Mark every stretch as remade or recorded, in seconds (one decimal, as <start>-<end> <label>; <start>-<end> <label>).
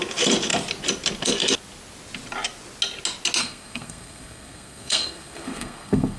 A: 0.0-3.4 recorded; 3.4-6.2 remade